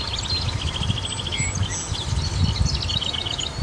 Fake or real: real